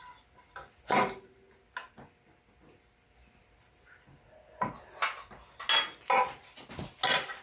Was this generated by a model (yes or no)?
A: no